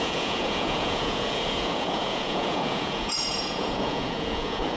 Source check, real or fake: fake